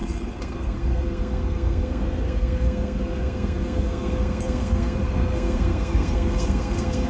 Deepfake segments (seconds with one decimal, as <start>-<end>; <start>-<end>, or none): 0.0-7.1